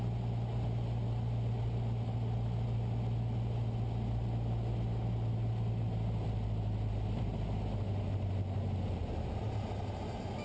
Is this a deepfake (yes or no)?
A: no